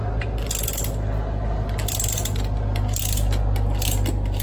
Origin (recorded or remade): recorded